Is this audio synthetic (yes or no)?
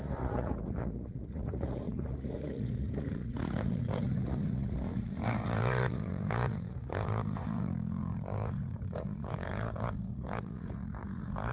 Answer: yes